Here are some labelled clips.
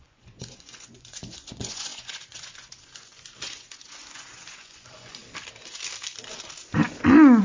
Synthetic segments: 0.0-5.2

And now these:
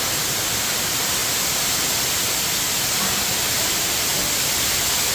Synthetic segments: 0.0-1.2; 3.6-4.1